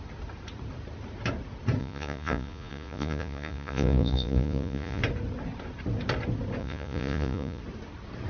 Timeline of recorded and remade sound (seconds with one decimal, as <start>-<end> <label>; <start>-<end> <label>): 0.0-1.8 recorded; 1.8-5.0 remade; 5.0-6.6 recorded; 6.6-7.6 remade; 7.6-8.3 recorded